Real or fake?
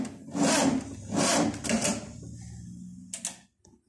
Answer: real